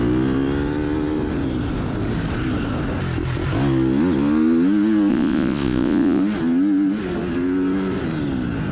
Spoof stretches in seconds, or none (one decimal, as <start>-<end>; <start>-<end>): 5.1-6.2